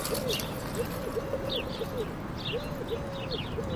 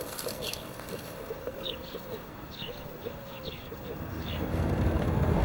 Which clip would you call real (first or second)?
first